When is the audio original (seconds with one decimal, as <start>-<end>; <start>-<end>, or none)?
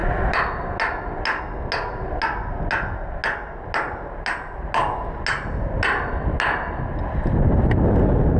0.0-8.4